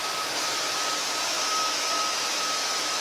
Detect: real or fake fake